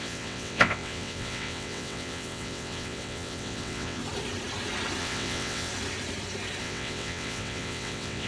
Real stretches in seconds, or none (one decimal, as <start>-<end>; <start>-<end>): 4.0-5.0; 5.7-6.6